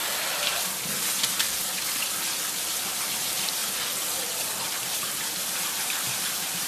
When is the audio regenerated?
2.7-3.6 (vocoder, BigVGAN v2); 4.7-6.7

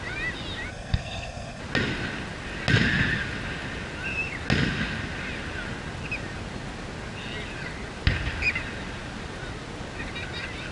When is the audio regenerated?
0.7-1.6 (codec, SNAC)

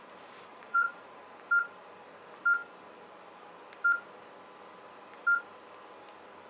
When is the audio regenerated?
0.5-1.2 (vocoder, Vocos)

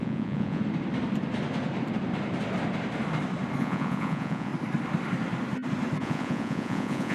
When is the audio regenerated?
0.0-0.6 (vocoder, Vocos); 3.6-4.5; 6.0-7.1

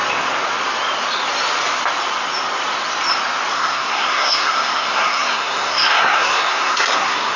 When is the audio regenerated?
3.5-7.4 (codec, SNAC)

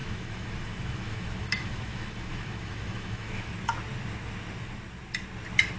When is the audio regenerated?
0.0-3.5 (autoencoder, DAC-VAE)